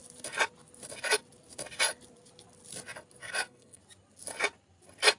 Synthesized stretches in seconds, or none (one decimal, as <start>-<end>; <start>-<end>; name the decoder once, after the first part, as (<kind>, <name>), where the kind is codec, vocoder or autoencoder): 3.2-3.8 (codec, SNAC)